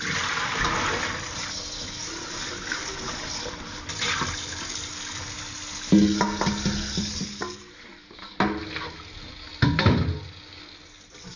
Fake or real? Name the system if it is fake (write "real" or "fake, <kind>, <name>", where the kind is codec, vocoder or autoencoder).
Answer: real